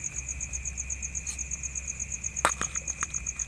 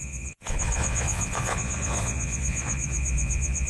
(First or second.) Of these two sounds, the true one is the first